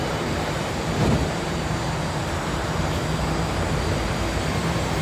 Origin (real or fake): fake